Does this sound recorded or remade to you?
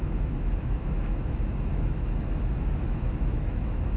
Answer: remade